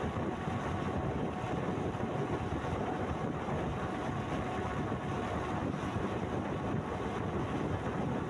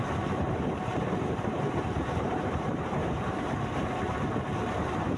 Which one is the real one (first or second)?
first